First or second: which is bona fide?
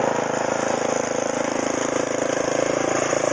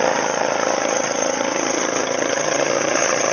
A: first